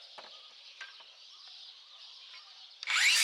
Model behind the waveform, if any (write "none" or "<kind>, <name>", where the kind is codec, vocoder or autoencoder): none